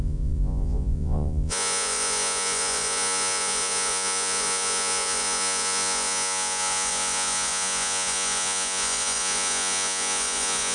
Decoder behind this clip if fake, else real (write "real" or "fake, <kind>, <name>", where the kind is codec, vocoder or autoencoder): fake, vocoder, Vocos